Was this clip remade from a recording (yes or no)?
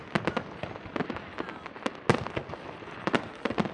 no